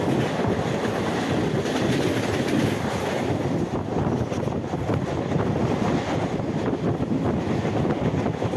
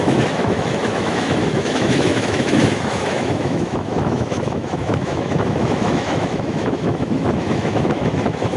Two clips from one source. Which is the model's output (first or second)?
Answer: second